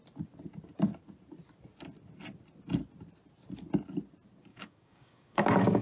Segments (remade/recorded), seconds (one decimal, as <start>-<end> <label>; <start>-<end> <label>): 0.0-4.5 recorded; 4.5-5.8 remade